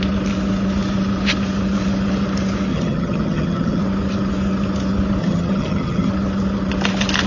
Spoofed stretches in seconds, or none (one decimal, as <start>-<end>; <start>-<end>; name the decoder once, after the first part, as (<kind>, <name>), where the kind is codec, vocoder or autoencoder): 2.7-3.8 (vocoder, HiFi-GAN); 5.2-6.1